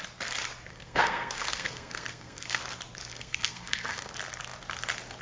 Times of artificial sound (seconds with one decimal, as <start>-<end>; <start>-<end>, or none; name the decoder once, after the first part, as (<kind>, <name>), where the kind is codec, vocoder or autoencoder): 0.7-2.6 (codec, SNAC); 3.1-4.1